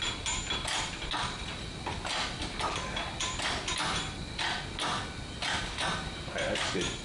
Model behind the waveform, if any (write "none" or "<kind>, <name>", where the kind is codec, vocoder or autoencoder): none